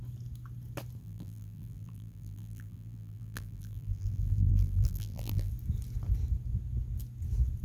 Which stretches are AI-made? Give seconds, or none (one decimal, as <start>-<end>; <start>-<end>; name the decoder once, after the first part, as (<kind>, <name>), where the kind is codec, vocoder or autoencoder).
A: 1.0-5.5 (vocoder, BigVGAN v2)